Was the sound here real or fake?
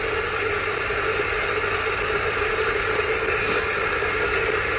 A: real